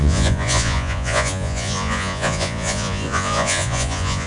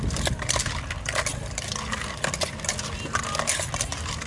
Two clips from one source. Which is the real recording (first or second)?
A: second